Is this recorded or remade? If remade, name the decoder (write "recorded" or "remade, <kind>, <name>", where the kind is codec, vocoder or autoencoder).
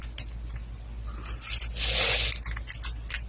recorded